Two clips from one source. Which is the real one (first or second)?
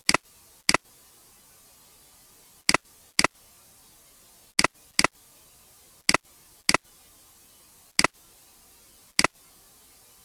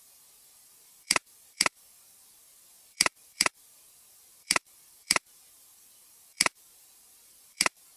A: first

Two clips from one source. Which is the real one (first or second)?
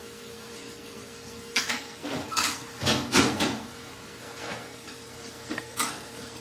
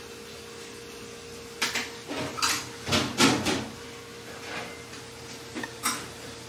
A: second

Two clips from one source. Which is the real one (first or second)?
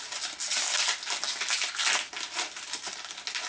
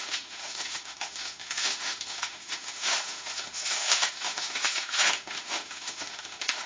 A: first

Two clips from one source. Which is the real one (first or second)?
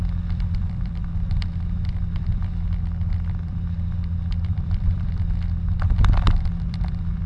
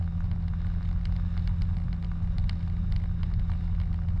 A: second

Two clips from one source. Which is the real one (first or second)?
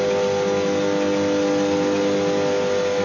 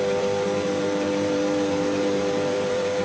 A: first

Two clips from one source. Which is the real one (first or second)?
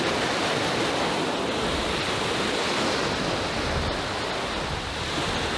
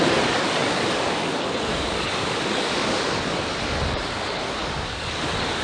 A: first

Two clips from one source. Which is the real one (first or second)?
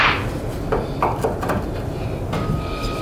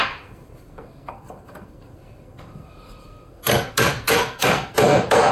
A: first